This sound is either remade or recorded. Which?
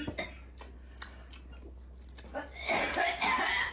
recorded